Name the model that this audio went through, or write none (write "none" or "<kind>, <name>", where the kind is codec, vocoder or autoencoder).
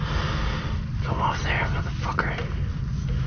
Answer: none